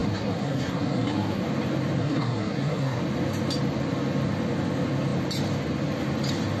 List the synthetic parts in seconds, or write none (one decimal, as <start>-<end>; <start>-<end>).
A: 0.0-1.4; 2.0-3.0